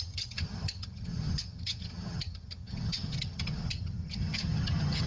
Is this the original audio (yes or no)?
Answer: no